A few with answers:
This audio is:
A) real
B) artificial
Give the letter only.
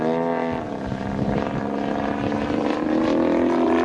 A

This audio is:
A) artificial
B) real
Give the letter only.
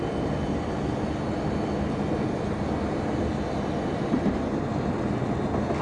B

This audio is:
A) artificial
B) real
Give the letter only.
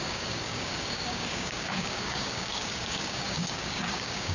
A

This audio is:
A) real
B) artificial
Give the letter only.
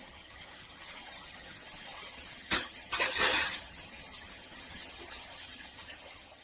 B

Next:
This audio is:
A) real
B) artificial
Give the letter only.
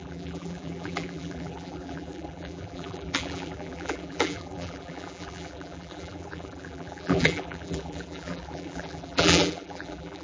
B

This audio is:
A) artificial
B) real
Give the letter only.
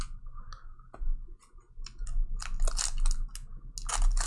B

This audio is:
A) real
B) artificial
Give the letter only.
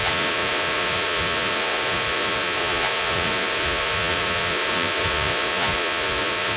B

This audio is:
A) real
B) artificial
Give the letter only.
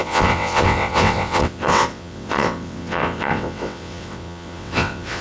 B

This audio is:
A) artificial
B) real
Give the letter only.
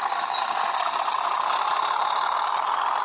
B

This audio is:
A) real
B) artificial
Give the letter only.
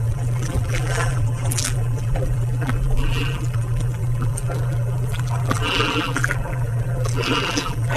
B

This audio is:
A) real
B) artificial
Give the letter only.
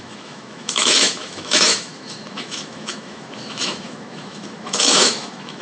B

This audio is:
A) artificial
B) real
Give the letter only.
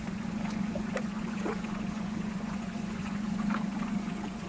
A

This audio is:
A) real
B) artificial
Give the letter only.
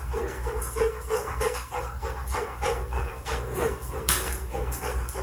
B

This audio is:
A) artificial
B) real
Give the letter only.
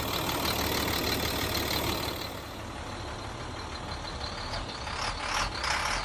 B